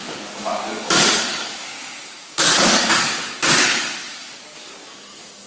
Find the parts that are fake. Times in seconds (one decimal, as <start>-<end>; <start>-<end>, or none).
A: 0.0-5.5